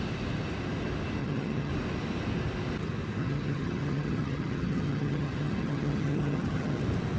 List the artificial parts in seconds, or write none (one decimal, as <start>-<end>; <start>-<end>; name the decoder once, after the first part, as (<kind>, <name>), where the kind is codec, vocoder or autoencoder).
1.2-1.7 (vocoder, HiFi-GAN); 3.2-6.8